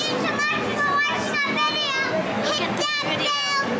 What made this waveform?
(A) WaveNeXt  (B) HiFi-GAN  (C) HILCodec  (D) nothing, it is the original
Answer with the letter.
D